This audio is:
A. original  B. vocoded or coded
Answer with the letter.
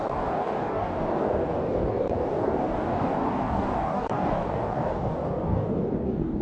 B